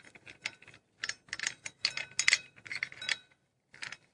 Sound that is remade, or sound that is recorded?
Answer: recorded